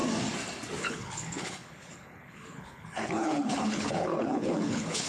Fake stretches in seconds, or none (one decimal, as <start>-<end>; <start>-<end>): 0.8-5.1